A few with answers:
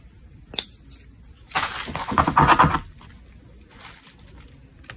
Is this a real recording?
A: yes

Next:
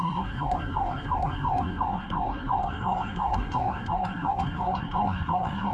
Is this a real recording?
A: no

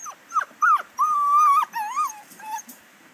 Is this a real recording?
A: no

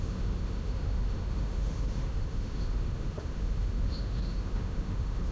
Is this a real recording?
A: no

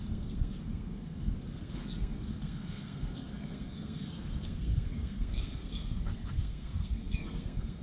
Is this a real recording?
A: no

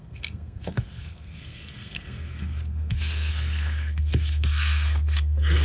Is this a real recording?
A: no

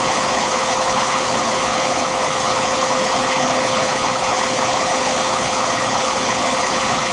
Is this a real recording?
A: no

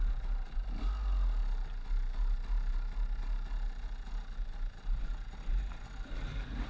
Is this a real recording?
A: yes